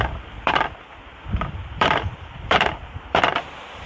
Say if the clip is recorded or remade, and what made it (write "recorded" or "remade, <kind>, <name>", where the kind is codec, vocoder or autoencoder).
remade, vocoder, BigVGAN v2